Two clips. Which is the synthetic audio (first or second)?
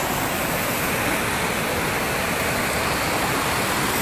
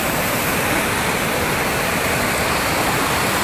second